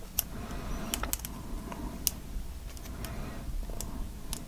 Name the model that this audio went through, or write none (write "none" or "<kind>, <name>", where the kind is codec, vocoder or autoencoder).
none